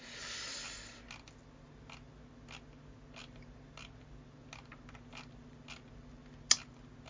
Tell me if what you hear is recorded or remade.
recorded